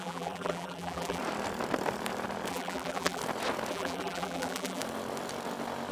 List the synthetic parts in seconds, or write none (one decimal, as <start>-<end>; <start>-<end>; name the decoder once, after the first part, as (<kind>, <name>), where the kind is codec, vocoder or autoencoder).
0.0-1.2 (vocoder, BigVGAN v2); 2.5-3.2; 3.7-4.8